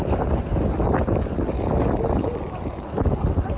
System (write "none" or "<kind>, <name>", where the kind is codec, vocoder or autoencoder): none